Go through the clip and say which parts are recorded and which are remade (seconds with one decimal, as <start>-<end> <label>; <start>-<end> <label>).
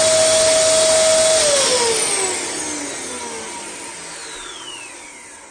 0.0-5.5 recorded